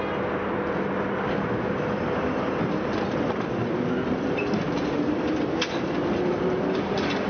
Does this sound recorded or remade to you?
recorded